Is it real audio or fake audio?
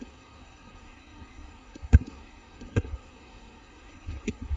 fake